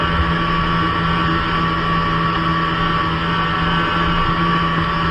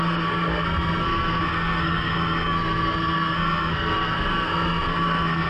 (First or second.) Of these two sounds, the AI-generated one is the second